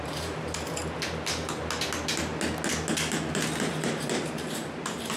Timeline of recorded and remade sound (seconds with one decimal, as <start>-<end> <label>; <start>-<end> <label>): 0.0-0.8 remade; 0.8-3.7 recorded; 3.7-5.2 remade